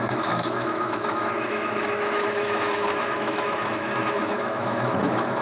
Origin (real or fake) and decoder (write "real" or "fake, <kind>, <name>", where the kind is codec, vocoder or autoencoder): fake, autoencoder, DAC-VAE